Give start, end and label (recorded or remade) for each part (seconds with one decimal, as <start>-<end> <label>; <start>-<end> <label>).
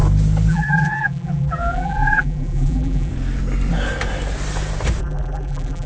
0.0-0.5 recorded; 0.5-3.1 remade; 3.1-5.0 recorded; 5.0-5.9 remade